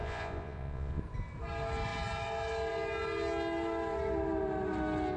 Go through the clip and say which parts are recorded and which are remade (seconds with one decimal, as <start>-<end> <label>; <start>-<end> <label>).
0.0-1.0 remade; 1.0-5.2 recorded